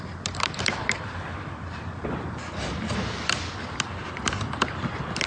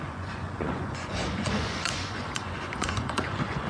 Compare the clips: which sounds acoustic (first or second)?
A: first